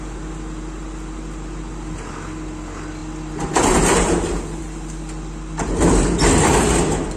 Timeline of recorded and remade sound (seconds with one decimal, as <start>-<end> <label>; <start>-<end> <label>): 0.0-7.2 recorded